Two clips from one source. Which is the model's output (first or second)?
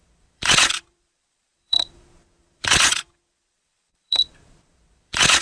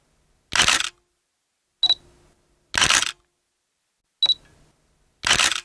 first